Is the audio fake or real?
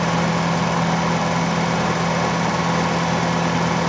real